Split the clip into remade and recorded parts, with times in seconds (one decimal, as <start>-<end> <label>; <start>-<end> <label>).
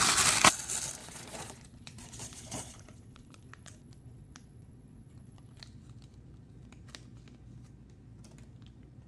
0.0-1.0 recorded; 1.0-5.6 remade; 5.6-9.1 recorded